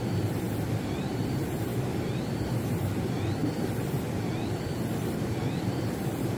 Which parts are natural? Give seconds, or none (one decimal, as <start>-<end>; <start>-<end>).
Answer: 3.4-5.2